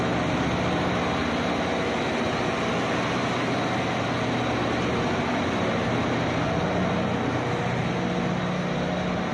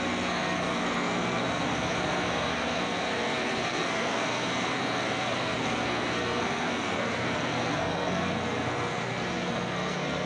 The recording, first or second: first